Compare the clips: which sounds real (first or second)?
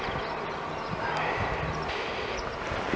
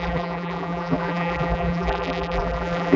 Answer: first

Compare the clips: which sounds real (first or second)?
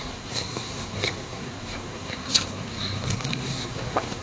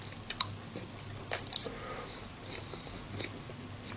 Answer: second